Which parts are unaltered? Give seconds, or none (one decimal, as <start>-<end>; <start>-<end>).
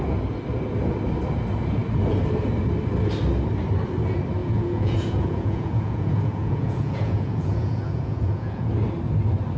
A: 0.0-4.4; 8.7-9.6